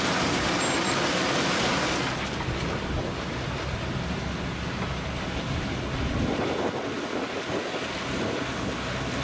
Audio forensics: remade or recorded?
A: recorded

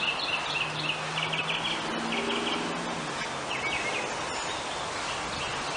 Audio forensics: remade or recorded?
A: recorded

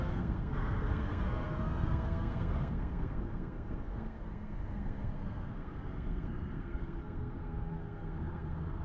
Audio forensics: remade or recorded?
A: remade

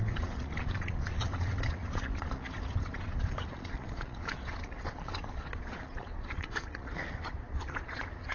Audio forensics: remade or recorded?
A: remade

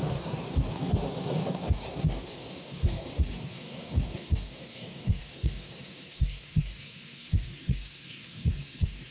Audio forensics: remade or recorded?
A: remade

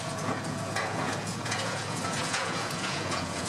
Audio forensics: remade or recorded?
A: remade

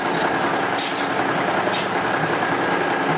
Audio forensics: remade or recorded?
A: recorded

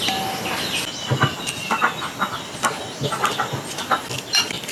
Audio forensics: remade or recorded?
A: recorded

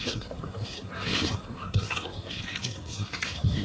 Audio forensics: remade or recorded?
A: remade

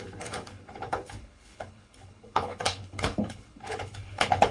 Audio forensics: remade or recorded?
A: remade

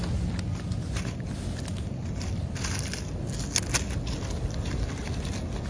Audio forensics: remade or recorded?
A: recorded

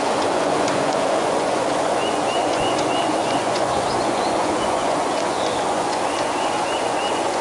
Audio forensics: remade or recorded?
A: remade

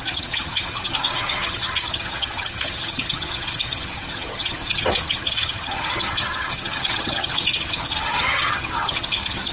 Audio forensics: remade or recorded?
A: remade